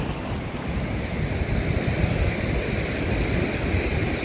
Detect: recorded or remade recorded